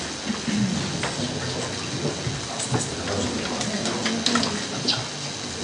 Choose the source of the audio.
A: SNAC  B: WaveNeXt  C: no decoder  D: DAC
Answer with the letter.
C